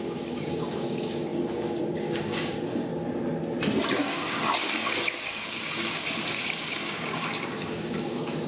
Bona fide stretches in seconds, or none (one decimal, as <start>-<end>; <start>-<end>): 2.9-3.9